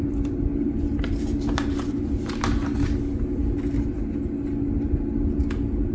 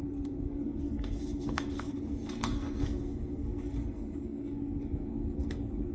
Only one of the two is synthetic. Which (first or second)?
second